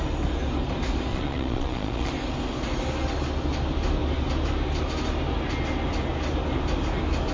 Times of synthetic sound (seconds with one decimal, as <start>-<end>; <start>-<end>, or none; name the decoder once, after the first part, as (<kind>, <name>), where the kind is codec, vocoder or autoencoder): 1.1-2.1 (vocoder, Vocos)